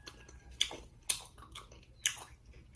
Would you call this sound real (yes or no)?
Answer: yes